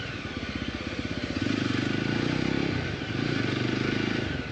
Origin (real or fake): real